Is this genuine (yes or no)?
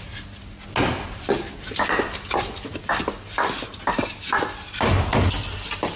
yes